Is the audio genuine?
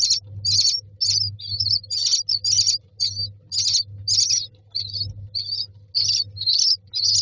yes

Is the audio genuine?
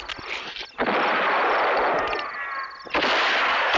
yes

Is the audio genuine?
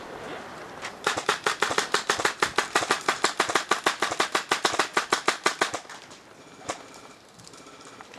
no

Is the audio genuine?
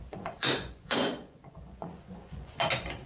no